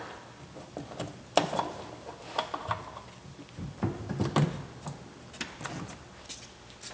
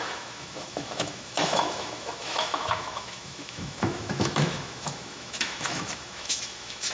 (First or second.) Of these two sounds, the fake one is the second